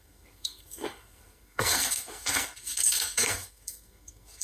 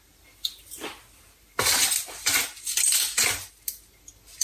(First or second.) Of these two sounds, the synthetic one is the first